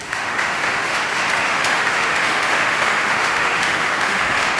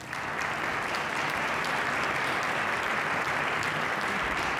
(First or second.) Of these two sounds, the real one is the second